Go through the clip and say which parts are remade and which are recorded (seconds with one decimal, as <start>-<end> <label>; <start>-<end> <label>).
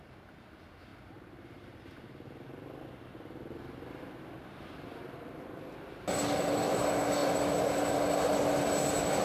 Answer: 0.0-0.9 recorded; 0.9-5.9 remade; 5.9-9.2 recorded